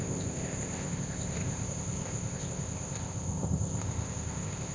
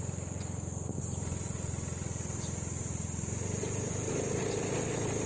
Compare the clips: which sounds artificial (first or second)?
first